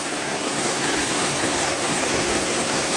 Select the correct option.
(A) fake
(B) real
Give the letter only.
A